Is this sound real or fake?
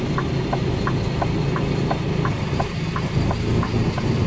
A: real